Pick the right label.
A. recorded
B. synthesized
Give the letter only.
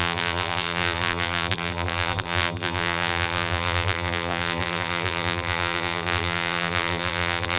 B